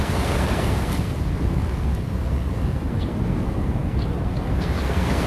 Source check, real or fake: fake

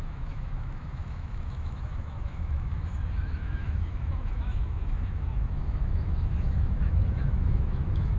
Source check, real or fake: fake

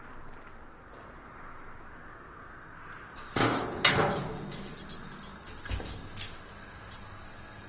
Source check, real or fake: real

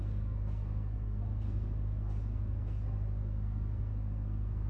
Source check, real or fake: fake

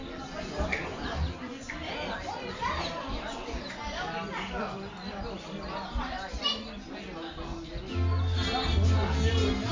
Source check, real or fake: real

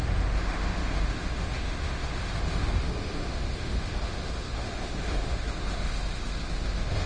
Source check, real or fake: fake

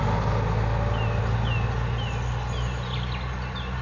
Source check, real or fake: real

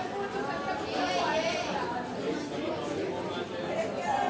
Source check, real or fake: real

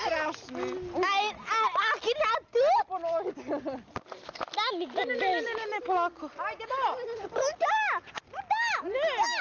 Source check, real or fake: real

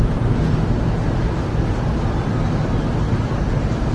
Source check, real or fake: real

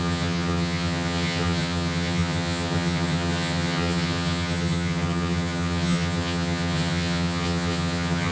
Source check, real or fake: fake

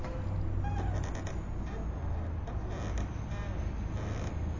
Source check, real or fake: real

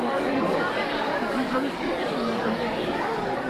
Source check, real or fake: fake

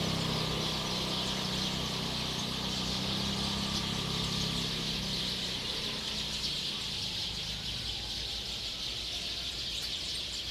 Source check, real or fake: real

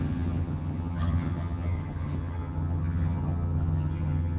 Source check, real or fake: fake